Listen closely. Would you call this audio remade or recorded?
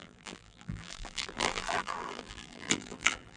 remade